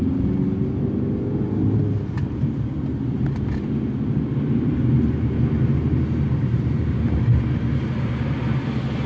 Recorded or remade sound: recorded